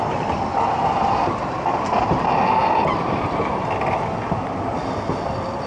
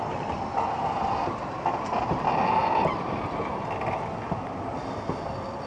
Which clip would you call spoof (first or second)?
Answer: first